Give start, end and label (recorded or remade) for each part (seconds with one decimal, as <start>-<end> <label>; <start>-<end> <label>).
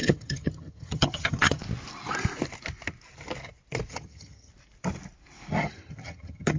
0.0-1.6 remade; 1.6-3.9 recorded; 3.9-4.5 remade; 4.5-5.5 recorded; 5.5-6.6 remade